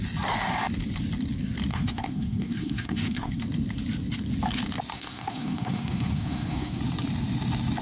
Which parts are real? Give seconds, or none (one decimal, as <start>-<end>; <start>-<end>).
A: 0.0-1.7; 3.4-4.9; 6.8-7.8